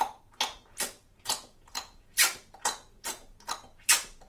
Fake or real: fake